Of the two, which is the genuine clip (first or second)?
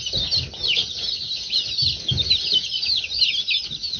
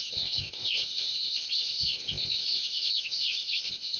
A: first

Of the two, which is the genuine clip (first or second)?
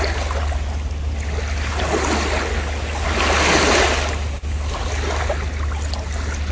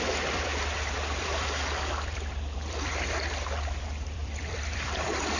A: first